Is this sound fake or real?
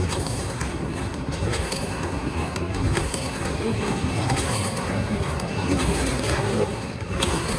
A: fake